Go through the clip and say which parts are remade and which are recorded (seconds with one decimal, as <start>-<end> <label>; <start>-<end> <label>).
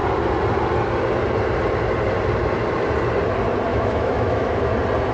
0.0-3.7 recorded; 3.7-4.6 remade; 4.6-5.1 recorded